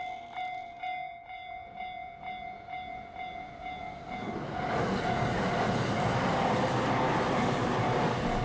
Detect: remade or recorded recorded